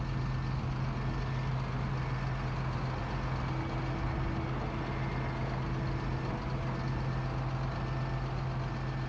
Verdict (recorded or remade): recorded